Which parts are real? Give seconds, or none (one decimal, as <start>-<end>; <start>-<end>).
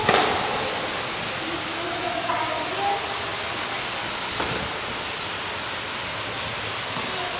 0.0-1.7; 2.3-7.4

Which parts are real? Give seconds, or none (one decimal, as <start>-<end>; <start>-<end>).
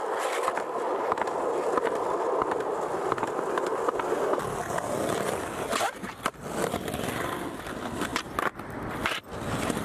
0.0-9.8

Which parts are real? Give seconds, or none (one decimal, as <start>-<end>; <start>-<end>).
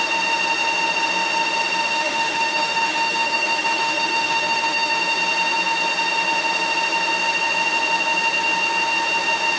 0.0-1.9; 5.0-9.6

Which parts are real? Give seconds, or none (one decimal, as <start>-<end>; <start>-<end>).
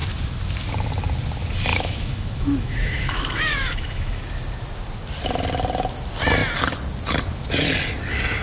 0.0-1.7; 4.2-8.4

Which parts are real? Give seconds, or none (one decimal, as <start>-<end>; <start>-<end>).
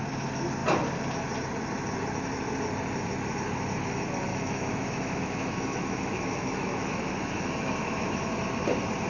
0.0-4.3; 8.3-9.1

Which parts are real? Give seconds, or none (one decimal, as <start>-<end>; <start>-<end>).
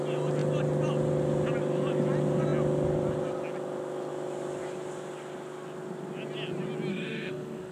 0.0-6.9